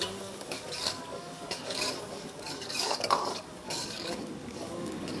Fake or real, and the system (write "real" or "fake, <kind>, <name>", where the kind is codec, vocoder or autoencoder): fake, codec, DAC